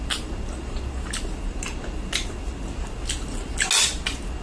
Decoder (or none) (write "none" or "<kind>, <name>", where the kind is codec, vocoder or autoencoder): none